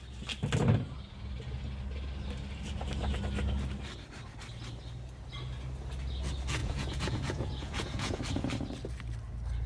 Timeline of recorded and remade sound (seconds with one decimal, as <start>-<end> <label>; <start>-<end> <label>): 0.0-6.6 recorded; 6.6-8.2 remade; 8.2-9.7 recorded